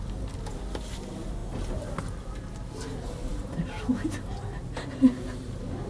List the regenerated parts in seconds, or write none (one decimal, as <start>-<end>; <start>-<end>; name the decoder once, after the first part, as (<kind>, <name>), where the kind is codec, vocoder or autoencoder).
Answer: none